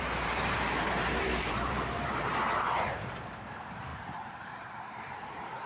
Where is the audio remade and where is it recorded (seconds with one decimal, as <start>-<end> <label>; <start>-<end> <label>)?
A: 0.0-5.7 remade